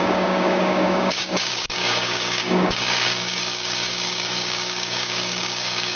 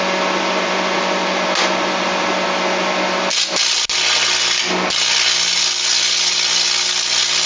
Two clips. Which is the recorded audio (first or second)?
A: second